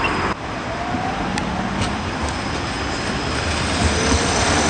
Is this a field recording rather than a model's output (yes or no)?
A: yes